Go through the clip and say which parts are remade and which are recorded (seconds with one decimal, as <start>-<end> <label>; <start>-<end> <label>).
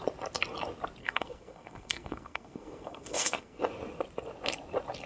0.0-1.0 recorded; 1.0-3.6 remade; 3.6-5.1 recorded